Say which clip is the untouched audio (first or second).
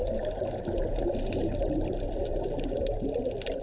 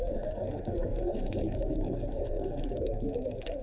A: first